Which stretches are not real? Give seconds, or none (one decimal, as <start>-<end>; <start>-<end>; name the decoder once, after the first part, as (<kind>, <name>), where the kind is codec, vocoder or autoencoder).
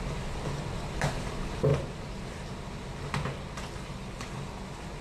none